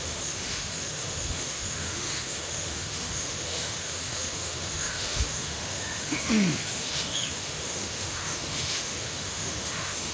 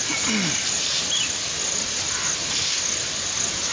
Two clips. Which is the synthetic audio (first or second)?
first